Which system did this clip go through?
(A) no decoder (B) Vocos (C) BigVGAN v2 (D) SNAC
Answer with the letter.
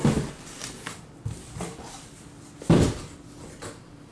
A